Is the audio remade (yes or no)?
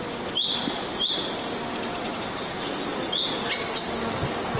no